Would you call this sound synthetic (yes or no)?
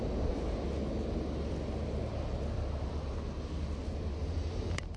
no